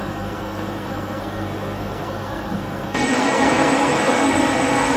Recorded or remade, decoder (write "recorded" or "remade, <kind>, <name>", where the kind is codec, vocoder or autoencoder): remade, codec, SNAC